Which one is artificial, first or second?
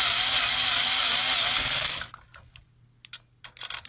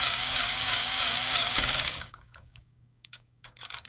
second